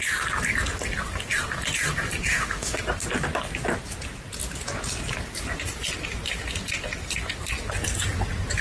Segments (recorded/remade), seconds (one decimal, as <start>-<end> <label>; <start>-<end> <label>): 0.0-2.3 recorded; 2.3-2.8 remade; 2.8-8.6 recorded